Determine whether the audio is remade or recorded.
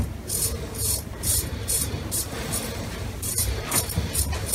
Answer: remade